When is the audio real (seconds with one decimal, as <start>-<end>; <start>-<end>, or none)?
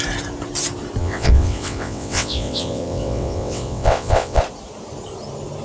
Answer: 0.0-1.0; 4.4-5.6